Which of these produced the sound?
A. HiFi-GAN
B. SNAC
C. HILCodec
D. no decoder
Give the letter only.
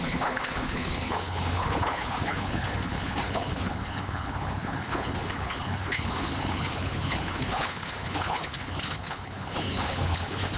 C